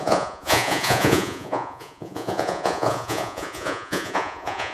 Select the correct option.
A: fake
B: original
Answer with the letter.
A